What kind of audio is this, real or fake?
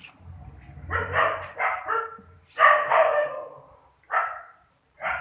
fake